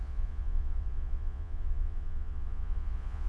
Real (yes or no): no